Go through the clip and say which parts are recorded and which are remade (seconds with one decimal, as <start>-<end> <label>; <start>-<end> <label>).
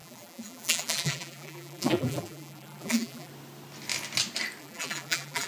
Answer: 0.0-3.3 remade; 3.3-4.6 recorded; 4.6-5.5 remade